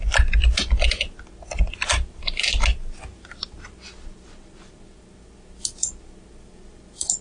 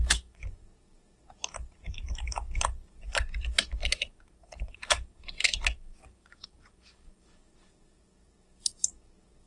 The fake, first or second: second